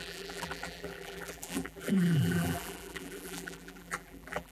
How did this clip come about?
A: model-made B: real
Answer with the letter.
A